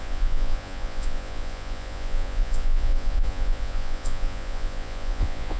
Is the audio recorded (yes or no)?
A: no